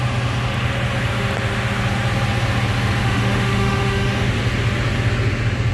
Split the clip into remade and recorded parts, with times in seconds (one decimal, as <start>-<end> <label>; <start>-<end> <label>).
0.0-3.0 recorded; 3.0-4.4 remade; 4.4-5.7 recorded